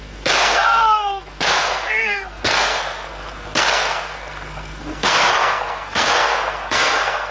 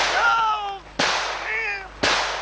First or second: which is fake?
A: first